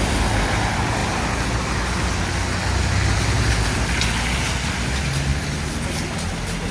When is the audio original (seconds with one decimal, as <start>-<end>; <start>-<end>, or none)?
0.0-6.7